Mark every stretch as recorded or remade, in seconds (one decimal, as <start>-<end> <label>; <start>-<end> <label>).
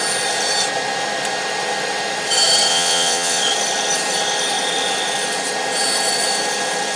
0.0-2.7 recorded; 2.7-3.4 remade; 3.4-7.0 recorded